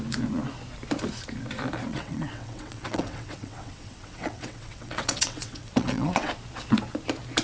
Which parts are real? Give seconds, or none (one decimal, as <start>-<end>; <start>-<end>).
0.0-1.9; 6.3-7.4